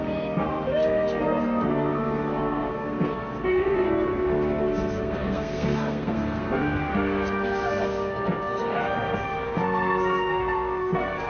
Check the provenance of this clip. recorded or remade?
remade